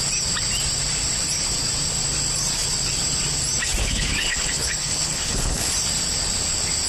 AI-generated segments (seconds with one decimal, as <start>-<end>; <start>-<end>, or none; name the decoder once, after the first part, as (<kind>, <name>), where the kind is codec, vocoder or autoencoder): 3.8-5.7 (codec, HILCodec)